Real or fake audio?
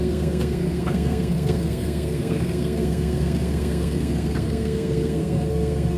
fake